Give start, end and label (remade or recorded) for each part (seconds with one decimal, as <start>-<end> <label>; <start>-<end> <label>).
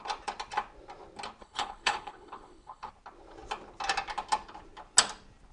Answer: 0.0-1.4 recorded; 1.4-2.9 remade; 2.9-5.5 recorded